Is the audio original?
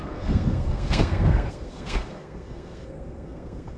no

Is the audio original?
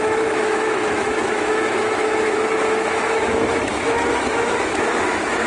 no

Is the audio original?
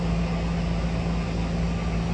yes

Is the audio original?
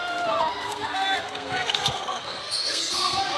no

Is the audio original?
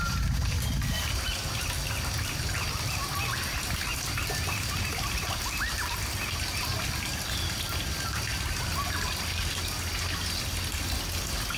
yes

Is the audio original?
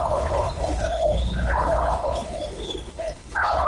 no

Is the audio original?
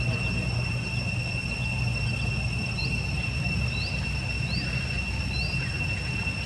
yes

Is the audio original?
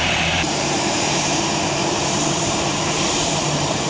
no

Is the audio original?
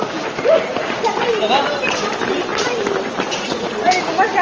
no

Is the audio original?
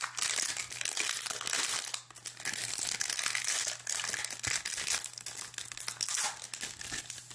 yes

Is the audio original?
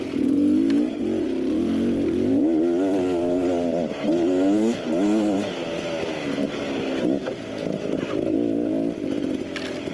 yes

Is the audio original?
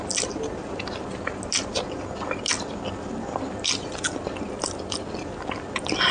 yes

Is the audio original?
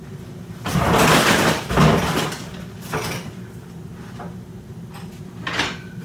yes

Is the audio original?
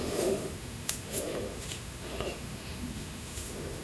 no